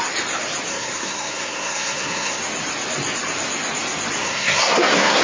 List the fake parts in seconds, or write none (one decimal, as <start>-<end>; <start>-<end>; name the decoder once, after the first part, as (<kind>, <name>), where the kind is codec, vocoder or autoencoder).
0.7-2.4 (codec, SNAC); 4.2-5.2